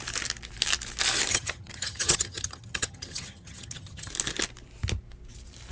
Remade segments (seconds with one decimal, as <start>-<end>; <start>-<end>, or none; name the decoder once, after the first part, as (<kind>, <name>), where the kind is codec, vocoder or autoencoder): 1.3-4.1 (vocoder, HiFi-GAN)